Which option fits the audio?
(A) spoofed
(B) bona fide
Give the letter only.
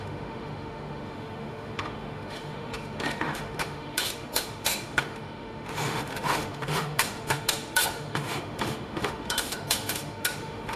A